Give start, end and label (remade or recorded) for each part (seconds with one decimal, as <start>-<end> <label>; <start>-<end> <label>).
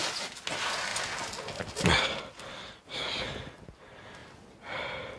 0.0-5.2 recorded